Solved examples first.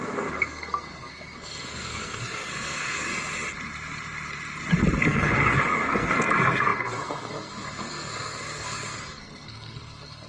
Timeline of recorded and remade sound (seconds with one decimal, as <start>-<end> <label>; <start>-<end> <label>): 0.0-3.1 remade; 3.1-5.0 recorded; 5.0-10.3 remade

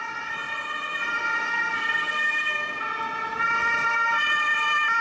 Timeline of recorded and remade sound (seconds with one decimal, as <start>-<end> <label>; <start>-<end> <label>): 0.0-1.5 recorded; 1.5-2.8 remade; 2.8-5.0 recorded

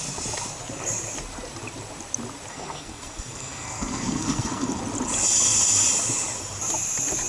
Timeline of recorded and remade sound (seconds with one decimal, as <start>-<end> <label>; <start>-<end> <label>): 0.0-2.5 recorded; 2.5-4.8 remade; 4.8-7.3 recorded